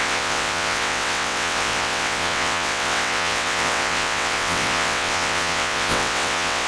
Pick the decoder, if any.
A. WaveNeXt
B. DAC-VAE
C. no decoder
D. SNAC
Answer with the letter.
A